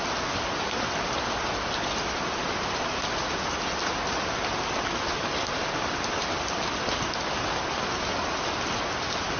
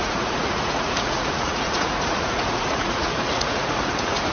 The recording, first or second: first